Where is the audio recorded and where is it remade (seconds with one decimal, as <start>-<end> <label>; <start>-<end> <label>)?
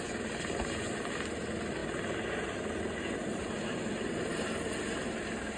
0.0-5.6 recorded